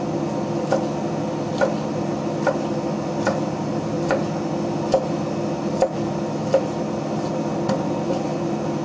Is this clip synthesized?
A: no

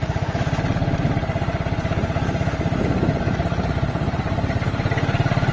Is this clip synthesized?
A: no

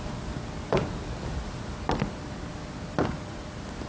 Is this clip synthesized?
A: no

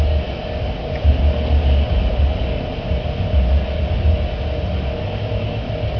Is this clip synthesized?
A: no